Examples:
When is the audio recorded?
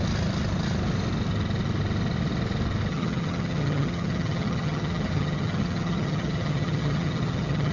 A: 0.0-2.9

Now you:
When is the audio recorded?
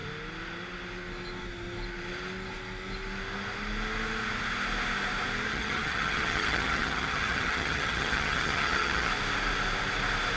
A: 0.0-5.5; 9.1-10.4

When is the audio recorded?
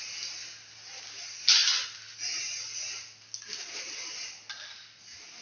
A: 0.0-5.4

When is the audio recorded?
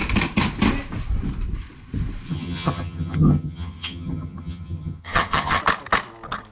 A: 0.0-2.3; 5.6-6.5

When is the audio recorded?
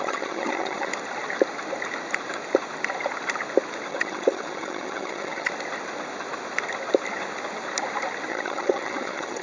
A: 0.9-3.9; 5.5-8.3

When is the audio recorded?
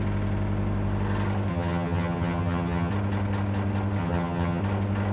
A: 0.0-1.5; 2.9-4.0; 4.6-5.1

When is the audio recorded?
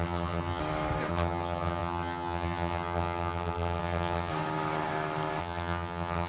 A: 0.6-1.1; 4.3-5.4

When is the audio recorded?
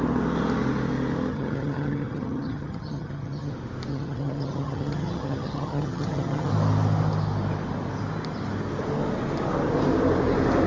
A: 0.0-1.3; 3.5-3.9; 6.5-10.7